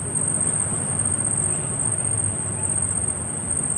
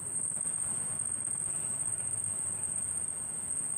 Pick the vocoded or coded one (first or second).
second